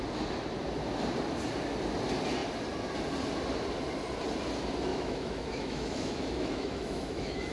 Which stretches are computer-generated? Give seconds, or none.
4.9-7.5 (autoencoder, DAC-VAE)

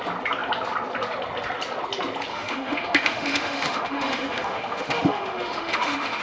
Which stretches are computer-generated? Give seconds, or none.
2.3-6.2 (autoencoder, DAC-VAE)

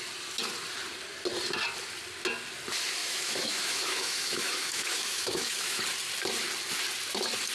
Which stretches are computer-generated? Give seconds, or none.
3.0-5.8 (autoencoder, DAC-VAE)

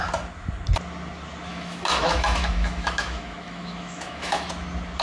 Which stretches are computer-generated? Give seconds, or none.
1.5-4.5 (autoencoder, DAC-VAE)

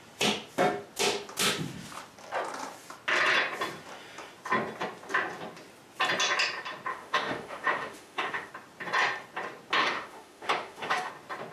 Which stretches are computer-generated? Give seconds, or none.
6.9-8.5 (autoencoder, DAC-VAE); 9.8-11.1